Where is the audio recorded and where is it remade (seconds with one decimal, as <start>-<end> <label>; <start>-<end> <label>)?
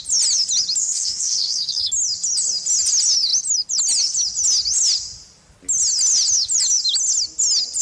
0.0-0.8 recorded; 0.8-1.9 remade; 1.9-7.8 recorded